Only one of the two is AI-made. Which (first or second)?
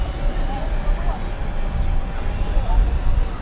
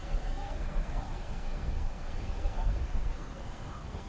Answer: second